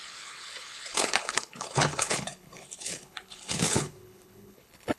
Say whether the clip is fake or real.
fake